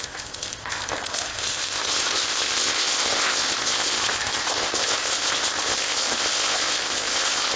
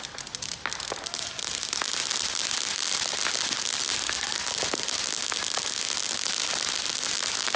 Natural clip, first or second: second